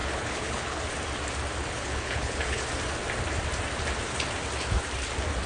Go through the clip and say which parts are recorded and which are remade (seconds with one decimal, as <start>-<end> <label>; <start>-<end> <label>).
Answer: 0.0-0.8 remade; 0.8-1.6 recorded; 1.6-2.6 remade; 2.6-5.5 recorded